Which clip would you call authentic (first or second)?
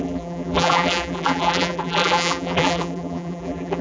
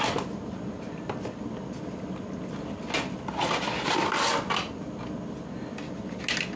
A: second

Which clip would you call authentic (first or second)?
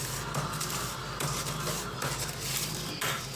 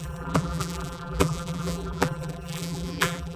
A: first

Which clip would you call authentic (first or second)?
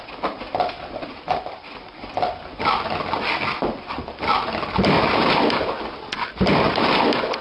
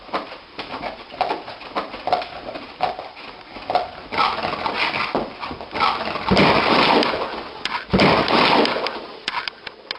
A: second